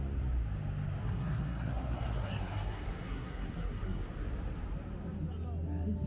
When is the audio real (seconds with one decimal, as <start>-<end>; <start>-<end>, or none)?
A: 0.0-1.0; 4.1-6.1